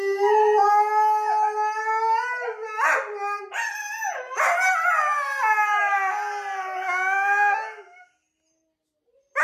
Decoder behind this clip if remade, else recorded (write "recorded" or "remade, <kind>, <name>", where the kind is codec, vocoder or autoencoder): recorded